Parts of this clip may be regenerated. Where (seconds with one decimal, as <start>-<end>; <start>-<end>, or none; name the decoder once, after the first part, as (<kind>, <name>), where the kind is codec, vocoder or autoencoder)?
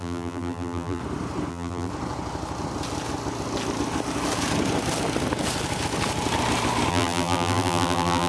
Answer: 0.0-1.0 (vocoder, BigVGAN v2); 1.5-1.9; 6.9-8.3